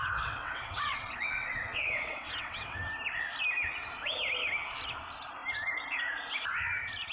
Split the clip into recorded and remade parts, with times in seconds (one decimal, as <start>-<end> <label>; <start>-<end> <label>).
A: 0.0-2.8 remade; 2.8-7.1 recorded